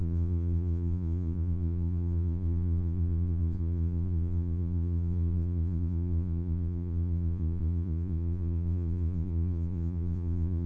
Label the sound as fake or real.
fake